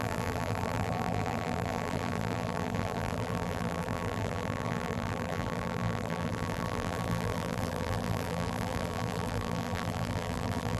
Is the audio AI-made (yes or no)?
yes